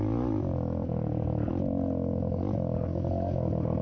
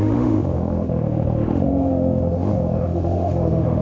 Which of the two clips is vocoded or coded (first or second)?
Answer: second